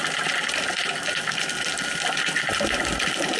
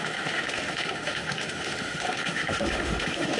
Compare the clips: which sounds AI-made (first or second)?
second